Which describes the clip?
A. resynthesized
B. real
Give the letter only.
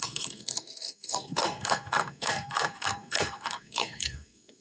A